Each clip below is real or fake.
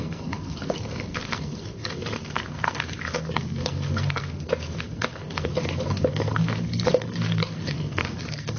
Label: fake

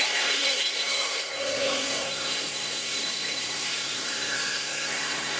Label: fake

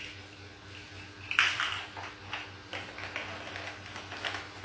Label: real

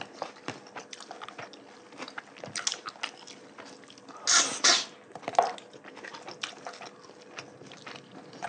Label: real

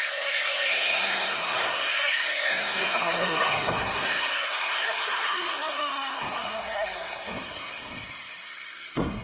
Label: fake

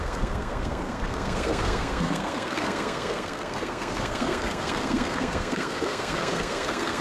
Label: fake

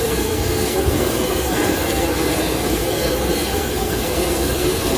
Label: fake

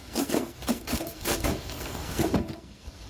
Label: fake